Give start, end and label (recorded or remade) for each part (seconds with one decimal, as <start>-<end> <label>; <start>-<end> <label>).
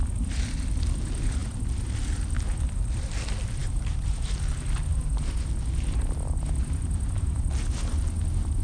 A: 0.0-8.6 recorded